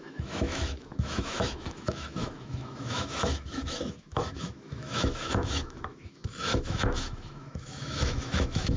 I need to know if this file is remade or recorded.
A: remade